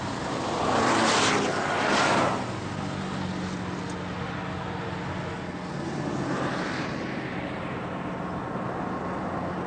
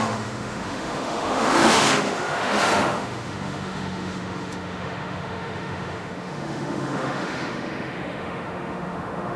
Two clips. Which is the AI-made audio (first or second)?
second